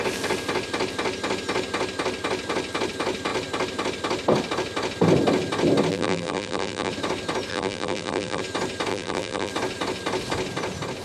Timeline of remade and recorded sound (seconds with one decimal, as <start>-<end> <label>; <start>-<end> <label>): 0.0-5.9 recorded; 5.9-6.9 remade; 6.9-7.5 recorded; 7.5-8.4 remade; 8.4-8.9 recorded; 8.9-9.5 remade; 9.5-11.0 recorded